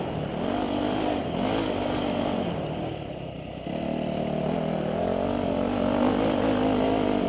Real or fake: real